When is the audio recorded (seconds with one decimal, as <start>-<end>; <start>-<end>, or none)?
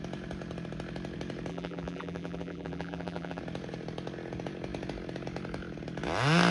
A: 0.0-1.5; 3.4-6.5